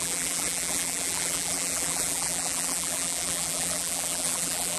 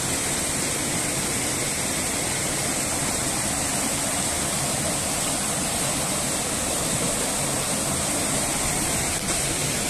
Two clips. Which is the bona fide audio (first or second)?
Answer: second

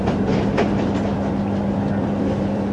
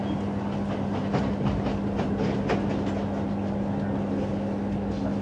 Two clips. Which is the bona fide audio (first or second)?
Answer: second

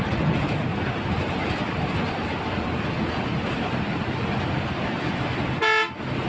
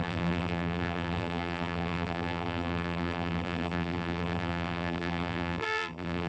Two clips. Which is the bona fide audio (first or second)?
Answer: first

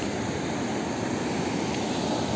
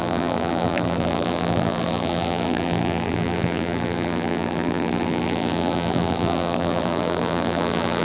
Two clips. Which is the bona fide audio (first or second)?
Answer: first